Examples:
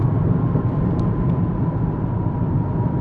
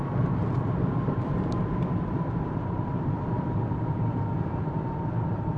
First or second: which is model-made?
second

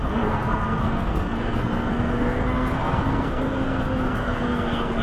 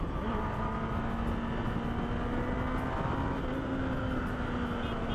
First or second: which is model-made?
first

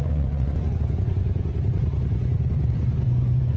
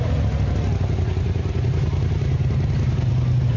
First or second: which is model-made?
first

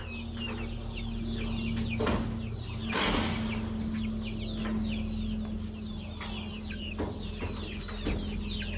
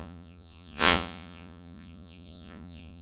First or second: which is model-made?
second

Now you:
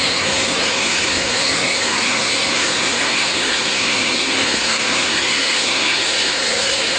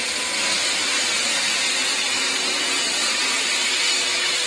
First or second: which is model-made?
first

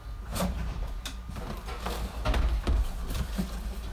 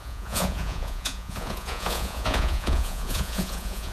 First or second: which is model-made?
second